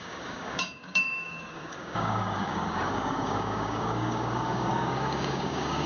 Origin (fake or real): fake